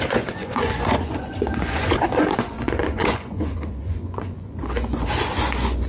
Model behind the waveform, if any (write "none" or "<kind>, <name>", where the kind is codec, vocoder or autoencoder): vocoder, Vocos